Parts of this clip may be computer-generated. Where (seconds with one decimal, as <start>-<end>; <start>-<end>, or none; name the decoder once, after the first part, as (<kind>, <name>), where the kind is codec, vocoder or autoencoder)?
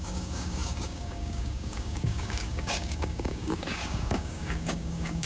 0.0-5.3 (codec, DAC)